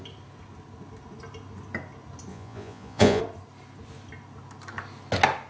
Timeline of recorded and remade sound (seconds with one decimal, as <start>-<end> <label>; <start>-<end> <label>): 0.0-2.3 recorded; 2.3-3.2 remade; 3.2-5.5 recorded